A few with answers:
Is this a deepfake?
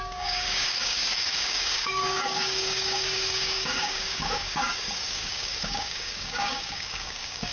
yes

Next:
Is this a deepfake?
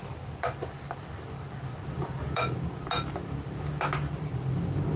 no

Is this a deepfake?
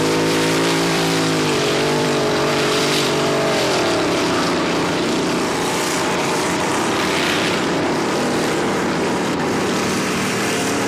yes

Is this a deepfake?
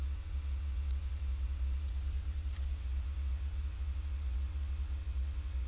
yes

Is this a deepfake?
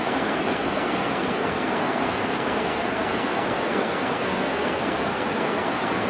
yes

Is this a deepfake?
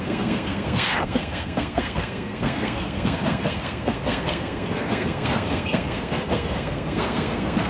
yes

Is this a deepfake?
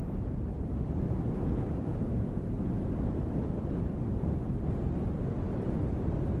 no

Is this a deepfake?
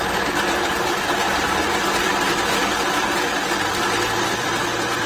yes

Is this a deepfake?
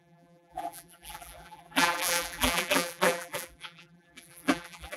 yes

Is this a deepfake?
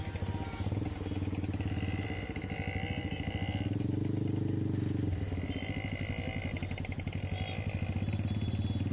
no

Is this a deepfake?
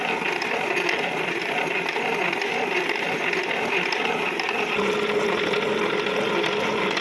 no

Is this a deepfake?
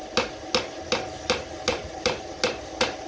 no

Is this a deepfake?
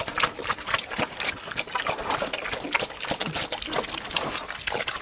no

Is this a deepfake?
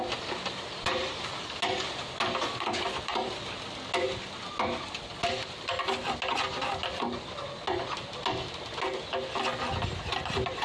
no